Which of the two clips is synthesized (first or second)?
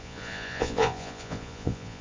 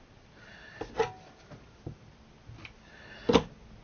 first